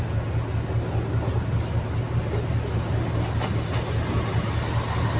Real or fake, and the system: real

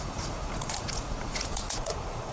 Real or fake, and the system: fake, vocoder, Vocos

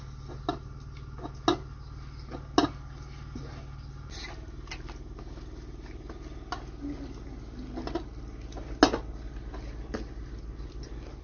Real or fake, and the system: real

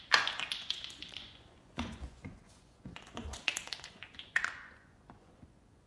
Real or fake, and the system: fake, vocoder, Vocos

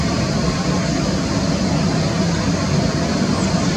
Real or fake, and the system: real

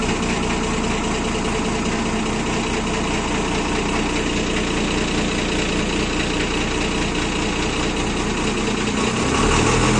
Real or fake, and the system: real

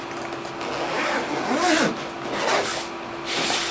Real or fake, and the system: real